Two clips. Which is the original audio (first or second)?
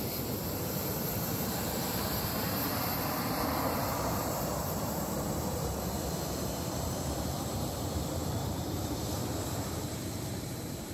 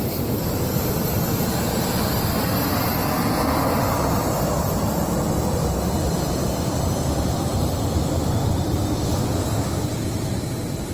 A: second